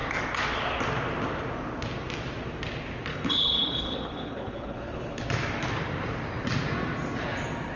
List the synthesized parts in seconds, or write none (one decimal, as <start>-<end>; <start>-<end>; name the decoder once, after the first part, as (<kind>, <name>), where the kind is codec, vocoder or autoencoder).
3.1-5.2 (codec, HILCodec)